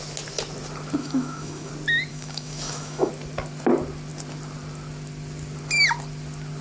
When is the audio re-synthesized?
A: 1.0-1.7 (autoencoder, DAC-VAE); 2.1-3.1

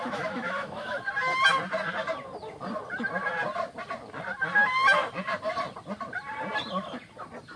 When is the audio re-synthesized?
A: 0.0-1.1 (autoencoder, DAC-VAE)

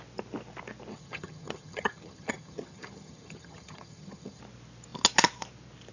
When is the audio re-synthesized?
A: 0.9-4.4 (vocoder, HiFi-GAN)

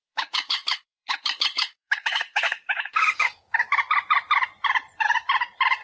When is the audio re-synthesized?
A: 0.0-3.5 (codec, DAC)

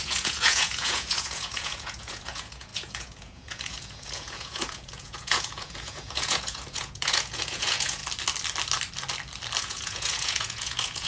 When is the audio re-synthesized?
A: 0.0-8.0 (vocoder, Vocos); 9.6-11.1